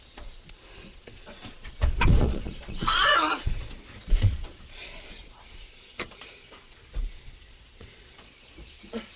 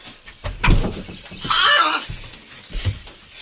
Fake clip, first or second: first